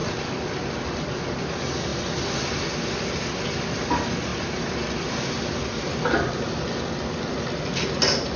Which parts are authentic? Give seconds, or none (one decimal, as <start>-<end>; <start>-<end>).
0.7-8.4